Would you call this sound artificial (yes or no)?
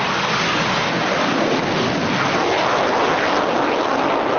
no